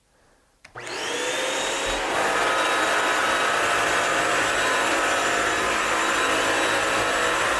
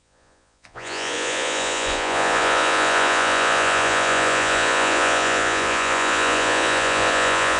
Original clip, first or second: first